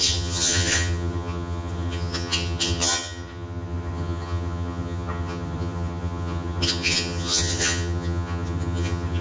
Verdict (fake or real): fake